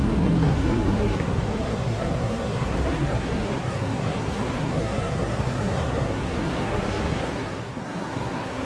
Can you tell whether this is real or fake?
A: fake